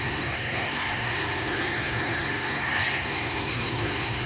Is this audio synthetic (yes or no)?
yes